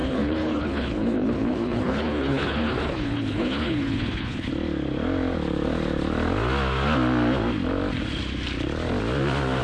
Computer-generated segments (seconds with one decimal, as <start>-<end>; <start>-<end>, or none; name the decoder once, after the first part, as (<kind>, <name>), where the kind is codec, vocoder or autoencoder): 0.0-4.5 (codec, HILCodec)